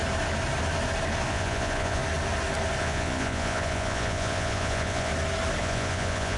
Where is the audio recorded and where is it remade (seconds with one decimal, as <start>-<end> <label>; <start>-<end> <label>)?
0.0-1.3 recorded; 1.3-2.0 remade; 2.0-2.8 recorded; 2.8-5.1 remade; 5.1-5.6 recorded; 5.6-6.4 remade